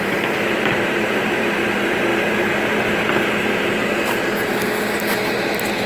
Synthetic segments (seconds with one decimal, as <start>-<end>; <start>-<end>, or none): 0.0-2.1